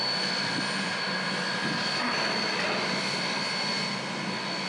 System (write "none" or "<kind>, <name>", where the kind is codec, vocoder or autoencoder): none